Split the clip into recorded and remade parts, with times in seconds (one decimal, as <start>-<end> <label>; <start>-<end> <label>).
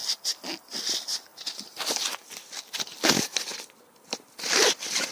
0.0-1.3 recorded; 1.3-3.1 remade; 3.1-3.5 recorded; 3.5-5.1 remade